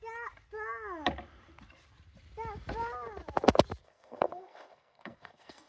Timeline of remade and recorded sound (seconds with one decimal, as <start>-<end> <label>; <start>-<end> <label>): 0.0-3.8 recorded; 3.8-5.7 remade